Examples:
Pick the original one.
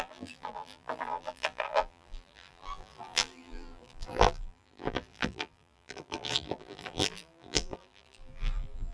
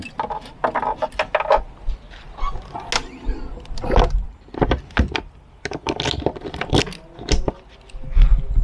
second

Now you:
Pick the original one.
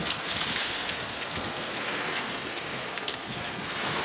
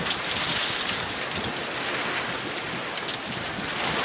second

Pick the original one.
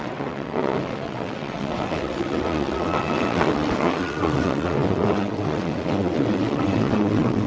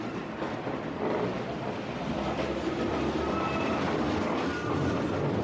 second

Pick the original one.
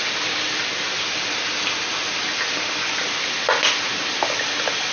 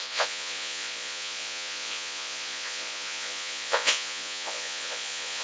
first